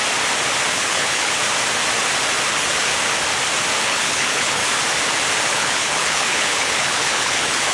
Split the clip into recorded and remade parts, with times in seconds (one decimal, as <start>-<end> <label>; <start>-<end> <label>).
0.0-0.7 recorded; 0.7-1.4 remade; 1.4-2.5 recorded; 2.5-2.9 remade; 2.9-3.8 recorded; 3.8-4.6 remade; 4.6-5.5 recorded; 5.5-7.7 remade